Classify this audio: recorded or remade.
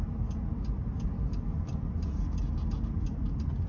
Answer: recorded